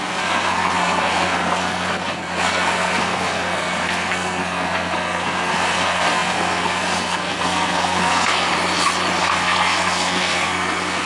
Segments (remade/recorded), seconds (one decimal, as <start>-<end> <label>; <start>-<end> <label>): 0.0-8.5 remade; 8.5-9.2 recorded; 9.2-11.1 remade